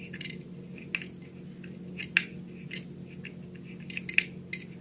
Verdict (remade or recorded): recorded